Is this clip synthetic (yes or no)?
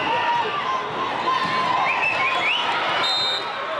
no